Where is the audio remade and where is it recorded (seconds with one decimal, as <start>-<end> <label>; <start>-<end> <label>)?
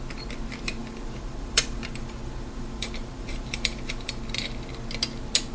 0.0-0.8 recorded; 0.8-4.1 remade; 4.1-5.5 recorded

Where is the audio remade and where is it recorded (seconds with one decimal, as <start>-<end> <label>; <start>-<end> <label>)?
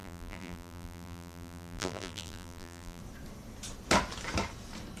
0.0-3.0 remade; 3.0-5.0 recorded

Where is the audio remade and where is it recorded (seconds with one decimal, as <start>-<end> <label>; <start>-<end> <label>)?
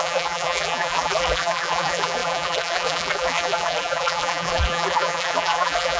0.0-6.0 remade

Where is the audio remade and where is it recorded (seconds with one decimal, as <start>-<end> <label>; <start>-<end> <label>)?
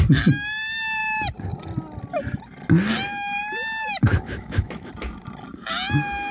0.0-4.1 recorded; 4.1-4.9 remade; 4.9-6.3 recorded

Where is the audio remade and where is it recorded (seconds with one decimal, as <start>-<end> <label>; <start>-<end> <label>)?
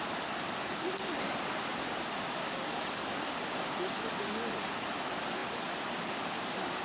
0.0-5.4 recorded; 5.4-6.8 remade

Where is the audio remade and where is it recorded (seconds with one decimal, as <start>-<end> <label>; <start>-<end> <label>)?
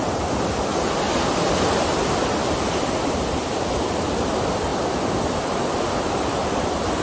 0.0-0.7 remade; 0.7-3.1 recorded; 3.1-4.7 remade; 4.7-5.4 recorded; 5.4-7.0 remade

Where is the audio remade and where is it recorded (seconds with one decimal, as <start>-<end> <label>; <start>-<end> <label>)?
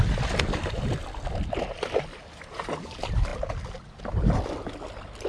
0.0-5.3 recorded